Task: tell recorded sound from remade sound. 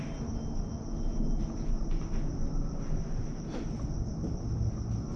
recorded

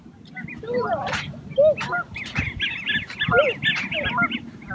recorded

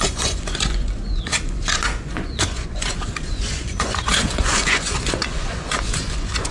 remade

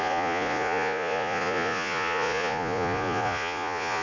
remade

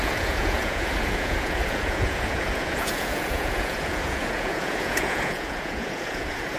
remade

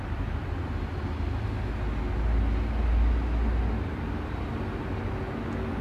recorded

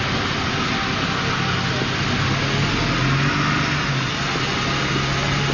recorded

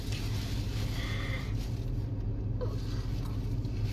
recorded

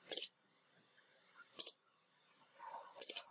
remade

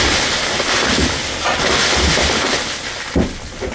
recorded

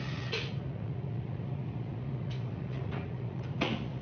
remade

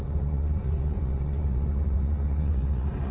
remade